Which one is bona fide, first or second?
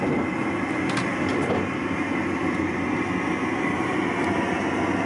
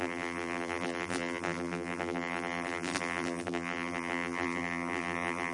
first